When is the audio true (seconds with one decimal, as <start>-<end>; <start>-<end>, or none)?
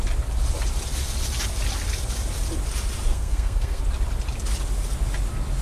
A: 0.0-3.1; 3.8-5.6